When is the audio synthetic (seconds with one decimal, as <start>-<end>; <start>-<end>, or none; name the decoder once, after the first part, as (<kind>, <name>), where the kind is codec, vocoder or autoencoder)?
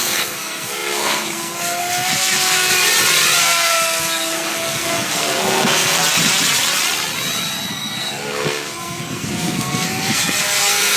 0.0-2.7 (codec, SNAC); 3.4-6.0; 7.7-11.0